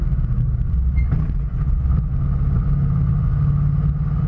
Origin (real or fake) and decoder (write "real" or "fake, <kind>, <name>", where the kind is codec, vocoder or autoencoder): real